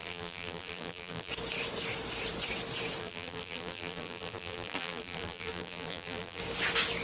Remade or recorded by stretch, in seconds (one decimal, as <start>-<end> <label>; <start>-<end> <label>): 0.0-1.3 remade; 1.3-3.0 recorded; 3.0-6.4 remade; 6.4-7.0 recorded